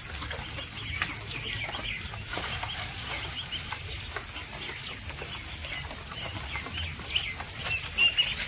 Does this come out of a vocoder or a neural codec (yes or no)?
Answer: no